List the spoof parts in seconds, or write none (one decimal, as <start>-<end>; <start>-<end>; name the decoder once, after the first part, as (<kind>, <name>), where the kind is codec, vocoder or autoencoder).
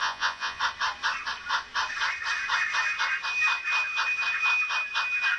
0.0-0.6 (vocoder, Vocos)